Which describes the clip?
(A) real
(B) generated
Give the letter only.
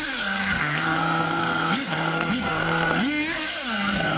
B